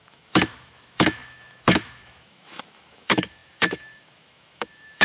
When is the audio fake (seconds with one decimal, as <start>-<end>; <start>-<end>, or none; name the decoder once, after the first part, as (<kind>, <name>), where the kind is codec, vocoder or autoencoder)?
0.0-5.0 (autoencoder, DAC-VAE)

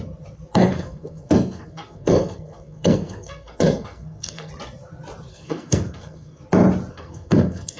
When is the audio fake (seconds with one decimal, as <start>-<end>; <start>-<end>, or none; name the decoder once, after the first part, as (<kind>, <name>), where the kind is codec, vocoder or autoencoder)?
0.5-4.5 (codec, SNAC); 5.3-6.4; 6.9-7.8

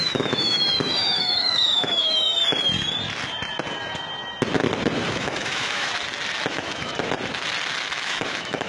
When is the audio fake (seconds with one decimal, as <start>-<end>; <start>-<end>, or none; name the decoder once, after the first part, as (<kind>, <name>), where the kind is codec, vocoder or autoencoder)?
0.0-2.3 (autoencoder, DAC-VAE); 5.1-5.9; 6.5-6.9; 7.9-8.7

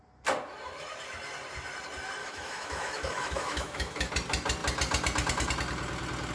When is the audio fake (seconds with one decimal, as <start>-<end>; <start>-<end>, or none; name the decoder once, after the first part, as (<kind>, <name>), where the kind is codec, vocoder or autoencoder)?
2.2-4.1 (autoencoder, DAC-VAE)

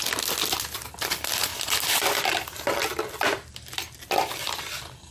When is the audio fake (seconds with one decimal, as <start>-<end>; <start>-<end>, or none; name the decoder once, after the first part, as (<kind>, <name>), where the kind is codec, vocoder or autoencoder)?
1.5-4.6 (vocoder, BigVGAN v2)

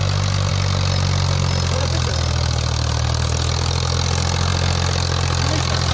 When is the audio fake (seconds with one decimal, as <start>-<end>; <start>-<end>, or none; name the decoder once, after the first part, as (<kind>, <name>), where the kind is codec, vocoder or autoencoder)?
none